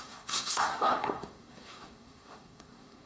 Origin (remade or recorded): remade